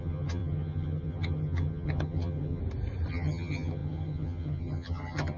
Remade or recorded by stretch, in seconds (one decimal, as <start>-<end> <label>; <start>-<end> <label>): 0.0-2.6 remade; 2.6-3.1 recorded; 3.1-5.4 remade